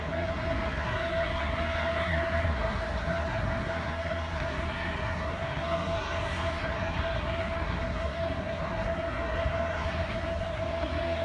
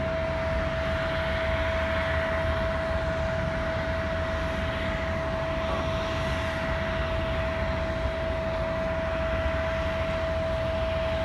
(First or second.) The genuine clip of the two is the second